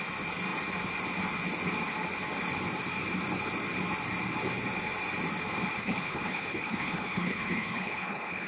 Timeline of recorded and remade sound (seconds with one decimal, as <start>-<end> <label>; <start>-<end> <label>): 0.0-5.8 recorded; 5.8-8.5 remade